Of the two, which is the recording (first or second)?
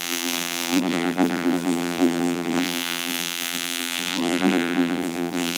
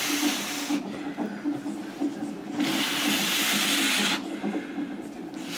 second